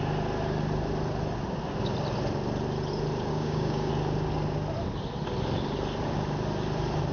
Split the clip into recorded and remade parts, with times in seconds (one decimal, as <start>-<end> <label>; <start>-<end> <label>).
0.0-3.3 recorded; 3.3-3.9 remade; 3.9-7.1 recorded